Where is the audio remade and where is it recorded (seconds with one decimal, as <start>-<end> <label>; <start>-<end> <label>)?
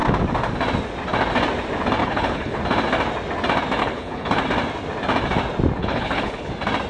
0.0-2.0 recorded; 2.0-2.6 remade; 2.6-3.8 recorded; 3.8-4.4 remade; 4.4-5.8 recorded; 5.8-6.5 remade; 6.5-6.9 recorded